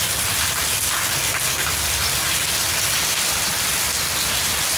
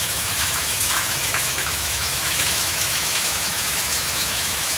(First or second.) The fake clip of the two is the second